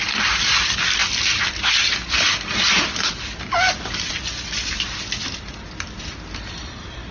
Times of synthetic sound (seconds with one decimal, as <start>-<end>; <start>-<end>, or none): none